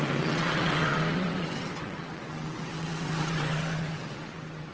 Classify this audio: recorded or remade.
remade